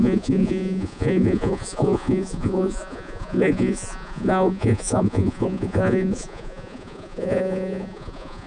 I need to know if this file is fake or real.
fake